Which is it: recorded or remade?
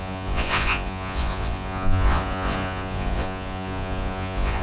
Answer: remade